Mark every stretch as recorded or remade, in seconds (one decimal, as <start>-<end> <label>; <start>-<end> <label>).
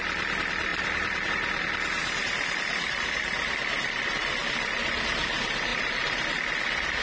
0.0-0.7 recorded; 0.7-1.3 remade; 1.3-2.0 recorded; 2.0-4.3 remade; 4.3-5.7 recorded; 5.7-6.4 remade; 6.4-7.0 recorded